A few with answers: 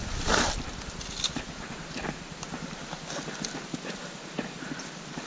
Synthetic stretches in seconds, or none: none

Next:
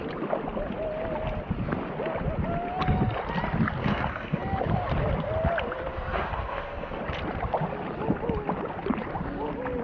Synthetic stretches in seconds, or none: 3.8-4.4 (codec, SNAC); 5.9-7.0

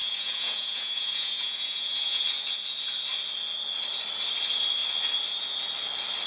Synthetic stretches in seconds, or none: 0.0-2.2 (vocoder, Vocos)

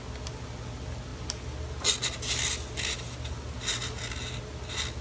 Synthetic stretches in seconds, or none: none